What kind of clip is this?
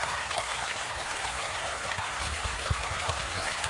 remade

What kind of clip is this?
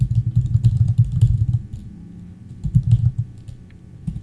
recorded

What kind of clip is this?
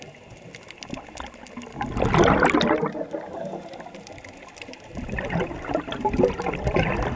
recorded